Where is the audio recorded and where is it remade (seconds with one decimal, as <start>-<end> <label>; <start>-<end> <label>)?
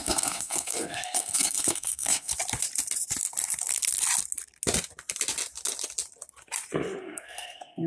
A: 0.0-2.3 remade; 2.3-7.0 recorded; 7.0-7.9 remade